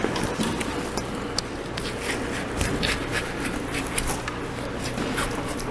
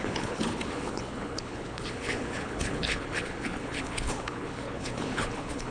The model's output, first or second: second